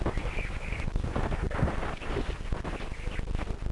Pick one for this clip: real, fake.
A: real